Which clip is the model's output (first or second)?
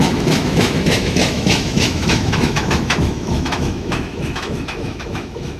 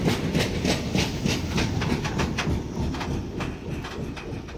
first